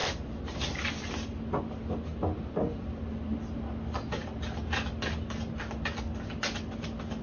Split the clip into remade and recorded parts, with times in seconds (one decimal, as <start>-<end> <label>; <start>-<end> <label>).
0.0-7.2 recorded